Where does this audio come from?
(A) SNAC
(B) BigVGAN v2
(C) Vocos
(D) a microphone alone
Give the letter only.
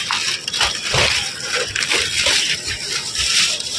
D